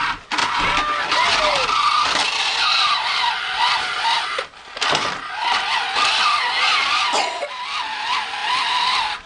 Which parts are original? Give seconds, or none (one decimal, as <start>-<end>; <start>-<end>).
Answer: 0.0-9.3